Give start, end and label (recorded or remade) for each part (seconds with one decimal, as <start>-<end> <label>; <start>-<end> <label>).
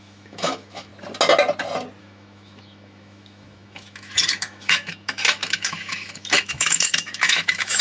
0.0-0.9 remade; 0.9-2.0 recorded; 2.0-7.8 remade